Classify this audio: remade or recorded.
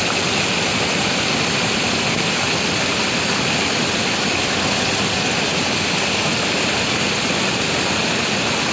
recorded